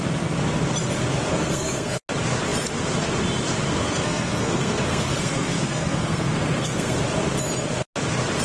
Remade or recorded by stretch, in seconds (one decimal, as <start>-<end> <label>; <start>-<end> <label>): 0.0-1.3 recorded; 1.3-2.0 remade; 2.0-3.8 recorded; 3.8-7.0 remade; 7.0-8.4 recorded